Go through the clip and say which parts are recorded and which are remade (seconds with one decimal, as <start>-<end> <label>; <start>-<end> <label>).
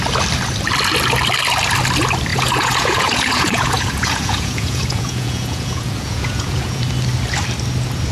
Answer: 0.0-2.3 recorded; 2.3-6.8 remade; 6.8-8.1 recorded